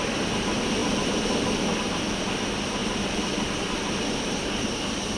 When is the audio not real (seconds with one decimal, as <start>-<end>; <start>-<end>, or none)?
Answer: 0.8-2.4; 2.8-3.9

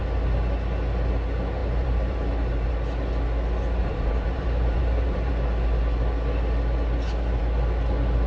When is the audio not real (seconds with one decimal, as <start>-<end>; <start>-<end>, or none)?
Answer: 1.6-2.7; 3.8-5.3

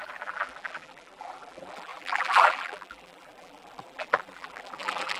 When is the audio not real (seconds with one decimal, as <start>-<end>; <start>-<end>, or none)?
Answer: 0.0-5.2

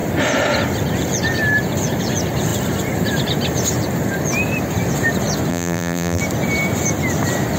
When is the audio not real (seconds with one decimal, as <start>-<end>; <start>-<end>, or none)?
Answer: 5.5-6.2